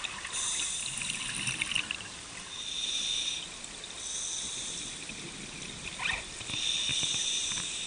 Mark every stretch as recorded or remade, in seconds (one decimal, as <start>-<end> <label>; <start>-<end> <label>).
0.0-7.9 recorded